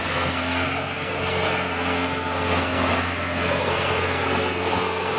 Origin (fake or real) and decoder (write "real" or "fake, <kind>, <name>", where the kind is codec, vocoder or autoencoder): fake, codec, SNAC